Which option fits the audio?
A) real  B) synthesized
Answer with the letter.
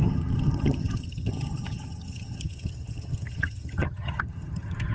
B